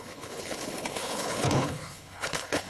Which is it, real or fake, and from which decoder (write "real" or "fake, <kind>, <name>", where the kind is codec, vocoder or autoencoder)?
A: fake, codec, HILCodec